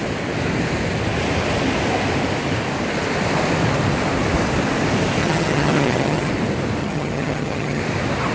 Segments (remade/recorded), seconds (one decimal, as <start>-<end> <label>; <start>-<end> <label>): 0.0-5.2 recorded; 5.2-6.3 remade; 6.3-6.8 recorded; 6.8-7.8 remade; 7.8-8.3 recorded